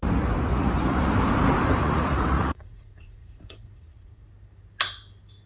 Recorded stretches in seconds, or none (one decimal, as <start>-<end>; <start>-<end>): 0.0-0.5; 1.1-1.8; 4.3-5.5